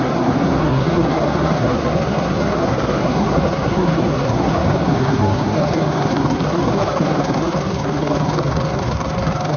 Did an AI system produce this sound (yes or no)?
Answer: yes